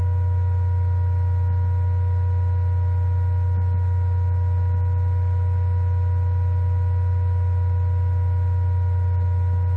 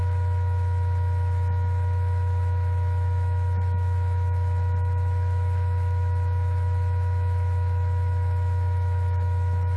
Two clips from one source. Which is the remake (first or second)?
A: second